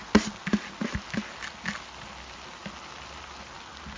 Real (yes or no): yes